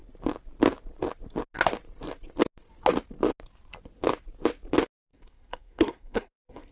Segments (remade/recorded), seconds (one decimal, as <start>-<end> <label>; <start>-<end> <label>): 0.0-5.1 recorded; 5.1-6.7 remade